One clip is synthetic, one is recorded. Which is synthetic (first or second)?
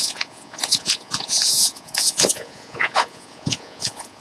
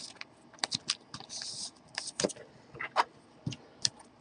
first